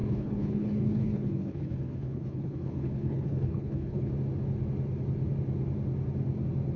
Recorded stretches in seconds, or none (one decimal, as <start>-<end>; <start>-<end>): 4.1-6.8